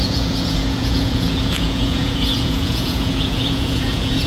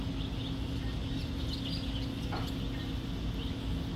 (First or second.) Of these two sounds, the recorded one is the second